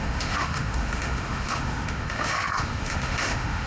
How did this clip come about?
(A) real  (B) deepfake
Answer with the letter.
B